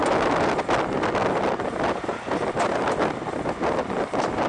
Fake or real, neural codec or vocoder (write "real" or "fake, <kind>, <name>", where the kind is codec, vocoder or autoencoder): real